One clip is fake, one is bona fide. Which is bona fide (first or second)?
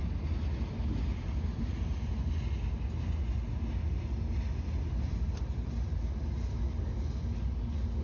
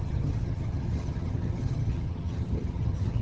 first